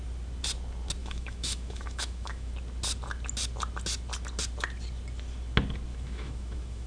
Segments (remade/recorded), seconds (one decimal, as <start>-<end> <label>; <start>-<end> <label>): 0.0-1.0 recorded; 1.0-2.5 remade; 2.5-5.9 recorded; 5.9-6.9 remade